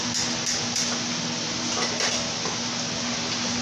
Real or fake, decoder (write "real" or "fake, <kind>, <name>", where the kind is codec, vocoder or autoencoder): real